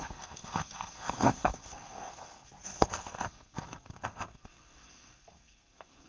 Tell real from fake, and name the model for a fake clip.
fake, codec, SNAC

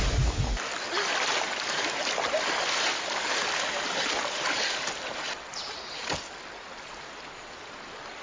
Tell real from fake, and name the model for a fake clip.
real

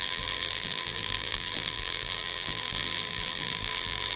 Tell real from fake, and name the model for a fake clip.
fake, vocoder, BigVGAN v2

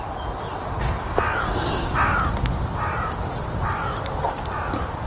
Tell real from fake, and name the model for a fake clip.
real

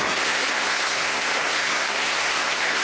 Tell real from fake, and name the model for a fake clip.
fake, codec, SNAC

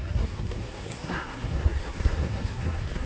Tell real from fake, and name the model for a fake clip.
fake, codec, SNAC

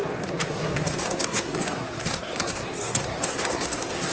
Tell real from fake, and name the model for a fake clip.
fake, codec, SNAC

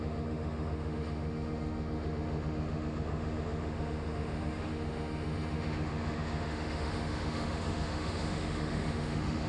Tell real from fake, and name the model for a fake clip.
fake, autoencoder, DAC-VAE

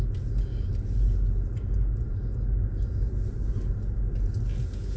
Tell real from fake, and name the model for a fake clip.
real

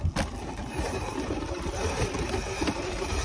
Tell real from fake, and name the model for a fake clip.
real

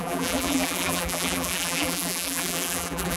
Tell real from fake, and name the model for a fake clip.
fake, vocoder, BigVGAN v2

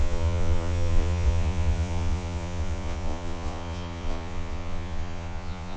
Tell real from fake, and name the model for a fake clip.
fake, vocoder, Vocos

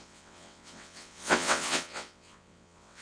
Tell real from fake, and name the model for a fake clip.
fake, vocoder, WaveNeXt